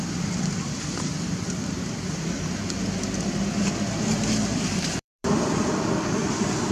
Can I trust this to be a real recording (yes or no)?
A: no